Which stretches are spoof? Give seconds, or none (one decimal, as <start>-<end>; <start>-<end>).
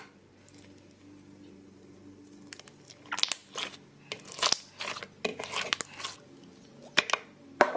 none